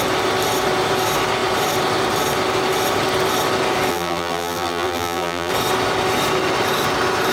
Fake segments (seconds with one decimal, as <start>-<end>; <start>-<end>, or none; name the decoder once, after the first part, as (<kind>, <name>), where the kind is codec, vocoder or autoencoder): 3.9-5.5 (vocoder, BigVGAN v2)